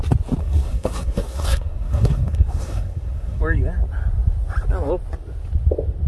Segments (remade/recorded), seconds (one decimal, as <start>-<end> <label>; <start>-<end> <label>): 0.0-0.4 recorded; 0.4-3.4 remade; 3.4-6.1 recorded